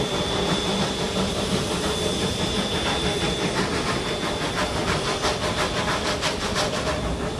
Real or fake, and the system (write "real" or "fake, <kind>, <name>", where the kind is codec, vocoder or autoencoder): real